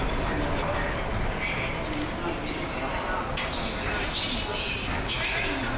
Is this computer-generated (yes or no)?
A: no